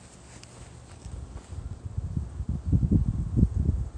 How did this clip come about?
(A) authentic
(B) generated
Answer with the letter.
A